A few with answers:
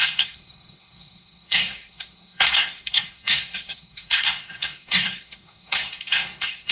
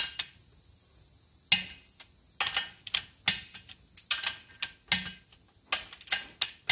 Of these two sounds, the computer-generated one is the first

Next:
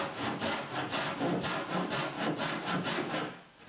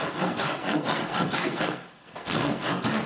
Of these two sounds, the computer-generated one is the second